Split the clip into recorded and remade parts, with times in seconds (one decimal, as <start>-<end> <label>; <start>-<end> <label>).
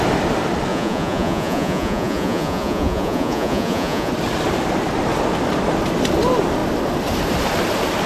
0.0-0.7 recorded; 0.7-4.1 remade; 4.1-8.1 recorded